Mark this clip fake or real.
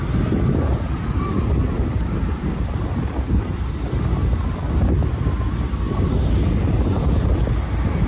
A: real